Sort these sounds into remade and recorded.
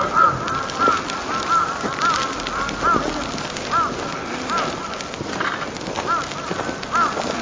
recorded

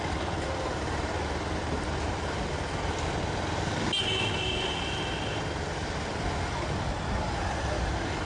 recorded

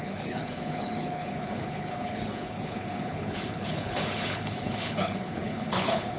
remade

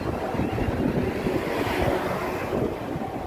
recorded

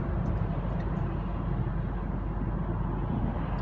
recorded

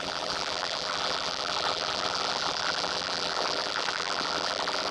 remade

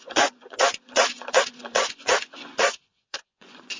remade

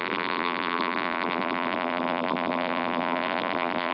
remade